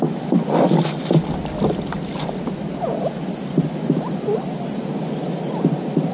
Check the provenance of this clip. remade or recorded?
recorded